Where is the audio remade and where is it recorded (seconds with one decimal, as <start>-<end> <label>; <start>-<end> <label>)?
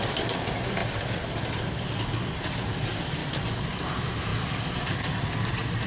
0.0-0.8 remade; 0.8-2.6 recorded; 2.6-3.2 remade; 3.2-3.8 recorded; 3.8-4.3 remade; 4.3-5.5 recorded; 5.5-5.9 remade